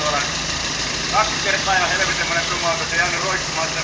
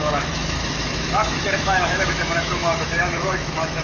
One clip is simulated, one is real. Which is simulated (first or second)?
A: second